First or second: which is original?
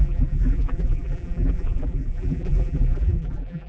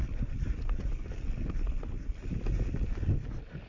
second